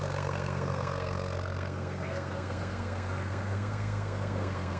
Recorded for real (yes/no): no